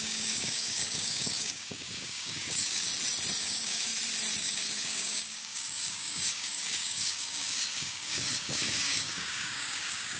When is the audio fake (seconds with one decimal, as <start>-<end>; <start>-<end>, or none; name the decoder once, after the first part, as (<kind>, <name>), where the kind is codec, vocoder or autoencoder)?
0.0-2.9 (codec, DAC); 3.4-3.9; 4.4-10.2